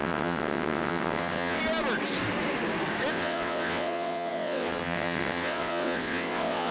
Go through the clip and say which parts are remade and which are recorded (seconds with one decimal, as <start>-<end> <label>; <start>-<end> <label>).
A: 0.0-1.6 remade; 1.6-3.1 recorded; 3.1-6.7 remade